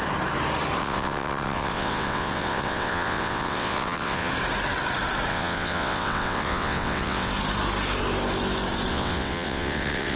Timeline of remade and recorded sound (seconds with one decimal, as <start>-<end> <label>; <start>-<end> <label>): 0.0-0.8 recorded; 0.8-4.3 remade; 4.3-5.3 recorded; 5.3-7.3 remade; 7.3-8.9 recorded; 8.9-10.2 remade